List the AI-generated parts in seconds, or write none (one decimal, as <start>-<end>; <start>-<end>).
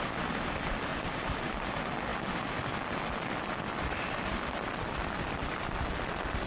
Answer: none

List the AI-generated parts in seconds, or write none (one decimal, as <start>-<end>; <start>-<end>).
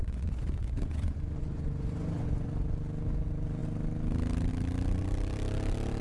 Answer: 0.0-2.5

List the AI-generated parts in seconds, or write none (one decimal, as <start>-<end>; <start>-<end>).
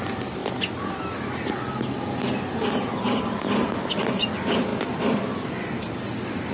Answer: none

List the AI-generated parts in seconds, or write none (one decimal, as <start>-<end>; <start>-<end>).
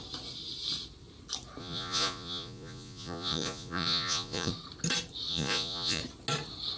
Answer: 1.6-4.5; 5.3-6.0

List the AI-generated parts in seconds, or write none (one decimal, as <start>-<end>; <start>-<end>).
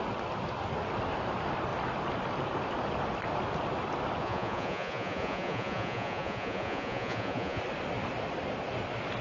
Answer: 4.2-7.6